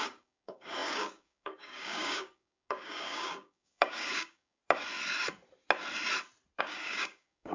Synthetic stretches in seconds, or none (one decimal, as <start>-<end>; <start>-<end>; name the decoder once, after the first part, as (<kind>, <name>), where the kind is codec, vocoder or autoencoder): 0.0-4.6 (codec, DAC); 6.6-7.5